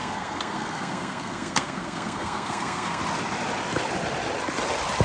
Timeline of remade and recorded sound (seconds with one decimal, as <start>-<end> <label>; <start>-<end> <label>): 0.0-3.0 remade; 3.0-5.0 recorded